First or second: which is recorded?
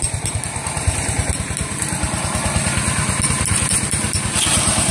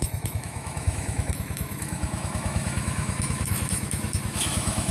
first